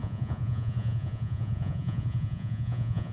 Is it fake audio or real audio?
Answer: fake